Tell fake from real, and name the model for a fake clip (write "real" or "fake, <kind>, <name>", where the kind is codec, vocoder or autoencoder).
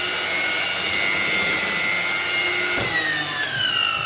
real